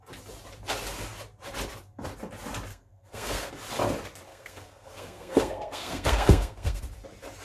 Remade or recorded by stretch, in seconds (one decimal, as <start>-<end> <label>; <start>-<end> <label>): 0.0-2.7 recorded; 2.7-3.5 remade; 3.5-4.3 recorded; 4.3-6.8 remade; 6.8-7.4 recorded